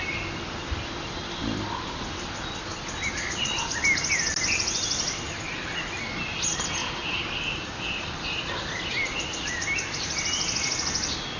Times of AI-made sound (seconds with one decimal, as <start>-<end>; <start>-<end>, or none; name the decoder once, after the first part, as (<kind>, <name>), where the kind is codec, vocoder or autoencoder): none